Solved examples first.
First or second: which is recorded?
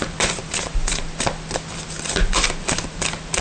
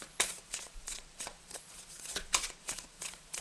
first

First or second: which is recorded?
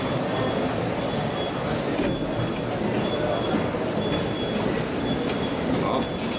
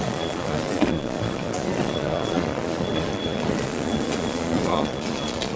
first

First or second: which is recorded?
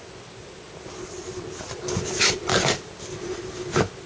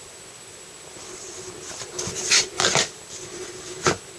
first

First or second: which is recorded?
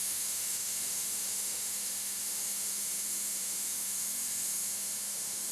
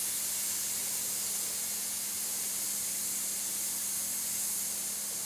second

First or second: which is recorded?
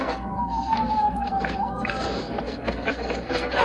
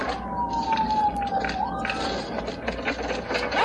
second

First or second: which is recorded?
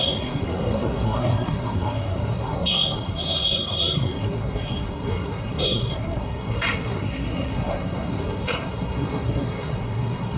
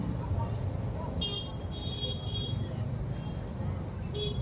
second